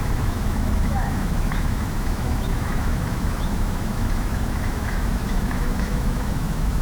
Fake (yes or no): yes